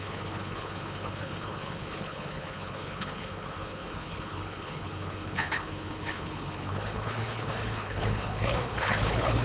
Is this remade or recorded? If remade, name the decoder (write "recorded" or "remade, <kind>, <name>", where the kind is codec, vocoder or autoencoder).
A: remade, codec, HILCodec